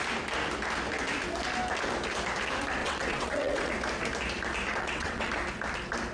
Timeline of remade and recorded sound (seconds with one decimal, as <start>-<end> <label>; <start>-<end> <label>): 0.0-2.8 recorded; 2.8-3.7 remade; 3.7-4.7 recorded; 4.7-5.3 remade; 5.3-6.1 recorded